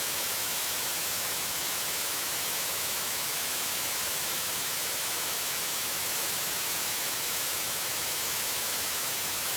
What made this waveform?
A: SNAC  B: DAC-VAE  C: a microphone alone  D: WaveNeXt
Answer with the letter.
B